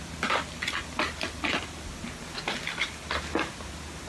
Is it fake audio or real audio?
real